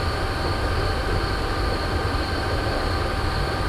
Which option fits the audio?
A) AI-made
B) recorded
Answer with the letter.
B